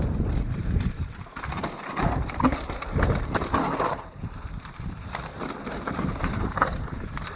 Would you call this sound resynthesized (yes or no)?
yes